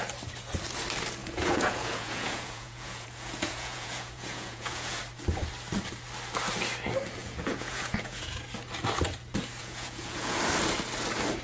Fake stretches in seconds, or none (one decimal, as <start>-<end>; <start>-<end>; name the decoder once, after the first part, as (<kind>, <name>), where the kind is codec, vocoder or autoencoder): 1.2-5.0 (vocoder, Vocos); 7.2-8.4; 9.6-10.4